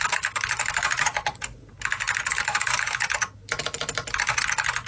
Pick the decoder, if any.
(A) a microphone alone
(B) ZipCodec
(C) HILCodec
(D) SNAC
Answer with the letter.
A